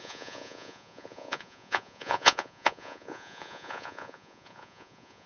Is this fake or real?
fake